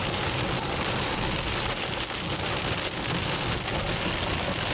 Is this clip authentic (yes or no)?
yes